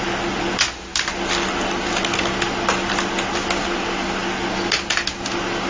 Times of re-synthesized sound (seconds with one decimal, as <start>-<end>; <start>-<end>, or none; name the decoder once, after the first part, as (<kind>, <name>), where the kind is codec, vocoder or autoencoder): none